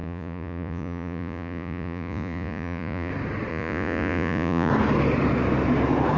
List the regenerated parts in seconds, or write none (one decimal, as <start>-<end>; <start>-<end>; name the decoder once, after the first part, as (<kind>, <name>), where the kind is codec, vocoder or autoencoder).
0.0-3.1 (vocoder, Vocos); 3.5-4.7